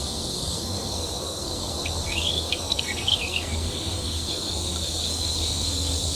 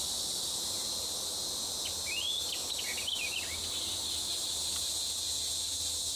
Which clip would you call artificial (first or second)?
first